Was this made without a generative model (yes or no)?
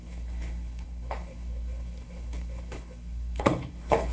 no